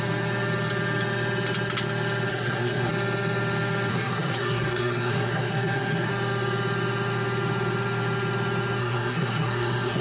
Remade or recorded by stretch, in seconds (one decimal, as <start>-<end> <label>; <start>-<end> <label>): 0.0-2.3 recorded; 2.3-2.9 remade; 2.9-3.9 recorded; 3.9-6.1 remade; 6.1-8.8 recorded; 8.8-10.0 remade